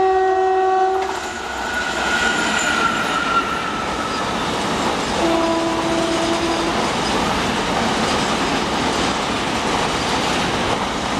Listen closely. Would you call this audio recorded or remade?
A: recorded